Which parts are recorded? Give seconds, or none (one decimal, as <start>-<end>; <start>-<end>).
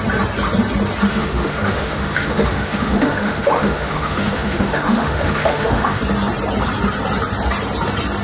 0.0-1.1; 6.0-8.2